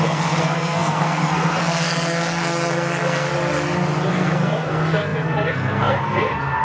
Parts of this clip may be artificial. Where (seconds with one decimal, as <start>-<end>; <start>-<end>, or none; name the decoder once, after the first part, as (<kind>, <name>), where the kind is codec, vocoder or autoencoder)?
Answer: 0.0-3.3 (codec, SNAC); 4.1-6.6